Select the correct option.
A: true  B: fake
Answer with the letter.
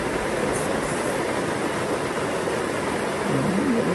A